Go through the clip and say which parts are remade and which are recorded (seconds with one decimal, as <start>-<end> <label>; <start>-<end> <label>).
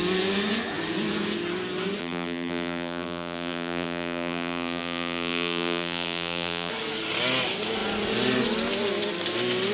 0.0-2.0 recorded; 2.0-6.7 remade; 6.7-9.7 recorded